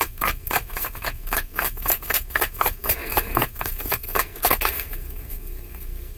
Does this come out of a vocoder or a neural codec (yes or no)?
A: yes